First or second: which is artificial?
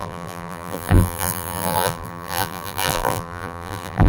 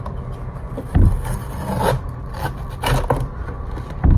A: first